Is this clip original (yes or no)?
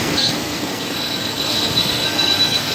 no